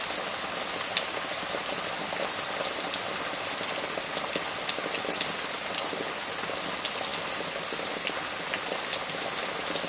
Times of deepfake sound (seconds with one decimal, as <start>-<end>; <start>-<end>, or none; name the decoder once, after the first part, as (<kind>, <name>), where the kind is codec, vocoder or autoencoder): none